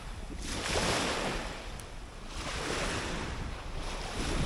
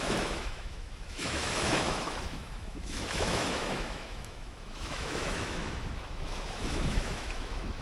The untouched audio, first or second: first